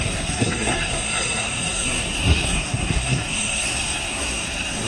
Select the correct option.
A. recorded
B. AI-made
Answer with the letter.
B